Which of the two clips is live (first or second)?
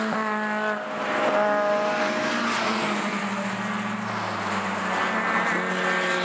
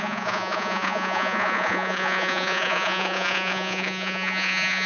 first